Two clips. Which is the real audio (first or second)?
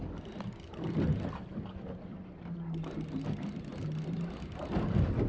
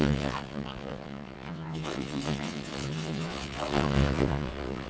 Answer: first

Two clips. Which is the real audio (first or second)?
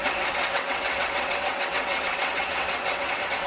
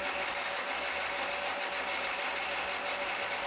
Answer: second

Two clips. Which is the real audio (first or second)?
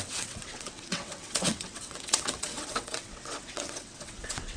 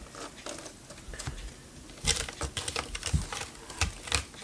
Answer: second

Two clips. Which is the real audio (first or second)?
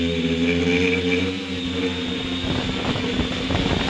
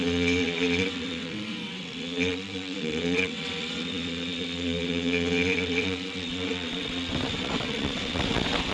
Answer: first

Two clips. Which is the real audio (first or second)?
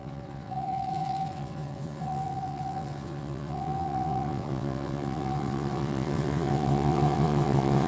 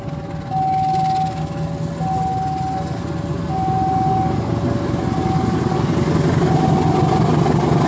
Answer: second